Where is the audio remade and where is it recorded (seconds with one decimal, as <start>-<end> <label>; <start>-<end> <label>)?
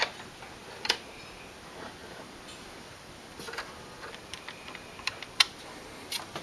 0.0-0.6 recorded; 0.6-1.1 remade; 1.1-2.0 recorded; 2.0-5.8 remade; 5.8-6.4 recorded